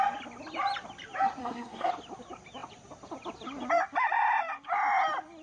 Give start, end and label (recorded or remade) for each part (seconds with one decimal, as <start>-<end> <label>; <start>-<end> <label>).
0.0-1.4 recorded; 1.4-1.9 remade; 1.9-5.4 recorded